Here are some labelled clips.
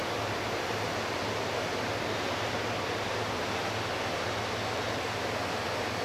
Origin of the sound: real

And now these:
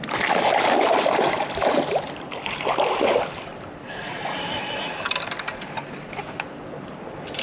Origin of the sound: real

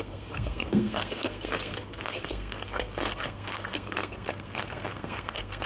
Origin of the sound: fake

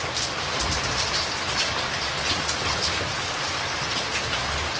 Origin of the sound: real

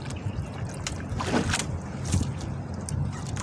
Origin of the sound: real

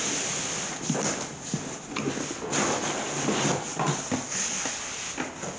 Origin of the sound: real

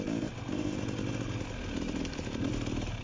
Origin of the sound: real